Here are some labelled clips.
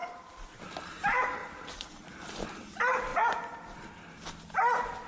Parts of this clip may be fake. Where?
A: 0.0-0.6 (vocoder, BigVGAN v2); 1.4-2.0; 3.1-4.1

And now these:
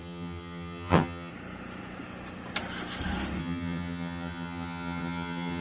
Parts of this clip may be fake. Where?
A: 0.0-1.3 (vocoder, HiFi-GAN); 3.4-5.6

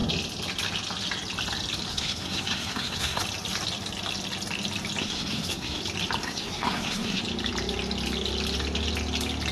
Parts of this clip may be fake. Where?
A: 1.9-3.2 (codec, SNAC); 5.0-5.8; 6.2-7.2

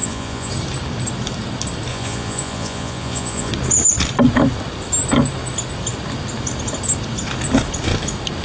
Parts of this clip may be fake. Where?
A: 0.0-0.5 (vocoder, Vocos); 1.9-3.5

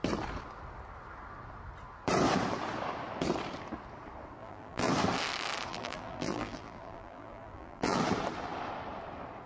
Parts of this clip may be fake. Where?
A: 4.4-4.9 (vocoder, BigVGAN v2); 5.7-8.0